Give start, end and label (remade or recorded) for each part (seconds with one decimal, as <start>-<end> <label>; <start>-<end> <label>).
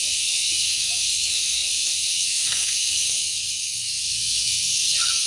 0.0-5.3 remade